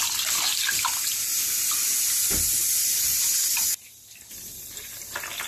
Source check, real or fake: real